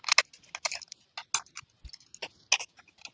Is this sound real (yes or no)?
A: yes